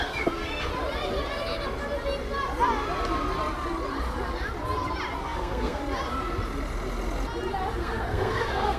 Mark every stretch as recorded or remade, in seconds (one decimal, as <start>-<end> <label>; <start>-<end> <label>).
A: 0.0-0.7 remade; 0.7-5.2 recorded; 5.2-5.8 remade; 5.8-7.8 recorded; 7.8-8.8 remade